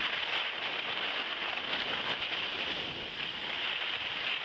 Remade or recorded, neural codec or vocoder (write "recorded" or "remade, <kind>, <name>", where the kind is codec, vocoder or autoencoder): recorded